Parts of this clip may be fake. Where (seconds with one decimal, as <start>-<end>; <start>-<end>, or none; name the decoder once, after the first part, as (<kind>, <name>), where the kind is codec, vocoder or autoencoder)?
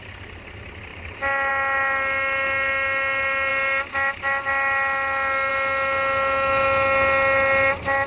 none